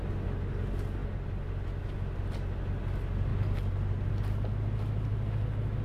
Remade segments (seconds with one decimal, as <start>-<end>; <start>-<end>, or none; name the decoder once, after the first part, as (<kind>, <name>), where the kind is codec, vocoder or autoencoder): none